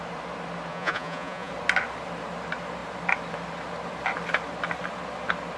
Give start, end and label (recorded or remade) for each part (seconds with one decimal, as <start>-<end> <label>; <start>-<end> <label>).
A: 0.0-0.7 recorded; 0.7-1.5 remade; 1.5-5.6 recorded